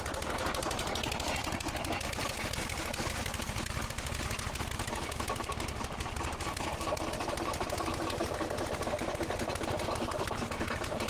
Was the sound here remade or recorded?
recorded